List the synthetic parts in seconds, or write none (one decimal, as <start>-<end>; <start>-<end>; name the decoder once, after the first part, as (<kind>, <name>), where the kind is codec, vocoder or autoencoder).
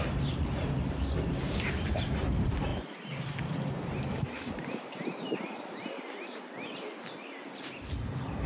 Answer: 0.0-8.5 (vocoder, BigVGAN v2)